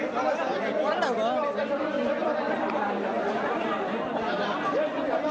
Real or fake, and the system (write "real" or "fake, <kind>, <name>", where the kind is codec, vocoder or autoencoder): real